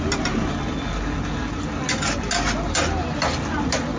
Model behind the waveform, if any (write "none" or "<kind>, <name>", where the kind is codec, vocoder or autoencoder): none